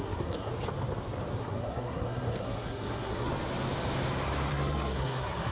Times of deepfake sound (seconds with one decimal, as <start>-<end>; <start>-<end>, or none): 0.0-0.5; 1.4-3.3; 4.5-5.5